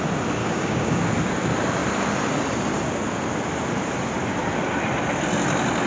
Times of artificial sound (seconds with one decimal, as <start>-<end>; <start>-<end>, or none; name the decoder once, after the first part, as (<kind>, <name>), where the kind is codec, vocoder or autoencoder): 0.4-1.0 (codec, DAC)